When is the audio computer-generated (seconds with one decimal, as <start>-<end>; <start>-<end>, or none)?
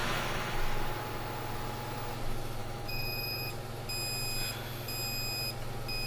0.0-0.6; 2.6-3.5